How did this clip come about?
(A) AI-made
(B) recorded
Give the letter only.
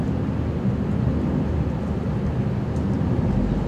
B